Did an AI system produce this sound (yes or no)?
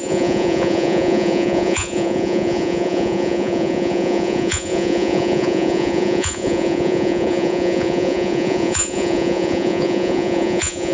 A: yes